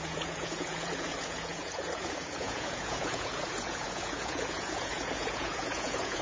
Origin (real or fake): fake